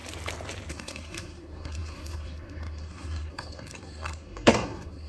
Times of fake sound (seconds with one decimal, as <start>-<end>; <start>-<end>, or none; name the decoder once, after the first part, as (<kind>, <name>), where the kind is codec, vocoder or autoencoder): 0.7-5.1 (codec, SNAC)